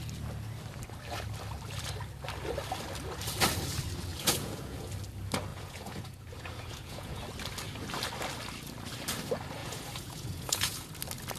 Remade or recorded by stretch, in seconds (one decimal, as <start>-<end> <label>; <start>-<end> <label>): 0.0-4.1 recorded; 4.1-4.9 remade; 4.9-5.5 recorded; 5.5-7.2 remade; 7.2-9.6 recorded; 9.6-10.9 remade; 10.9-11.4 recorded